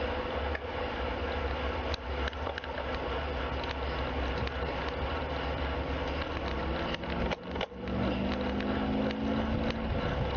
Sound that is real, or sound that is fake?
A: real